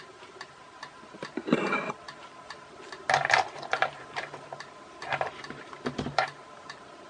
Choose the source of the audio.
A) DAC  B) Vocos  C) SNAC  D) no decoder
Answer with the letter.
D